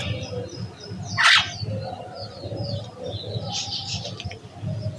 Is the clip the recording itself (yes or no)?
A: yes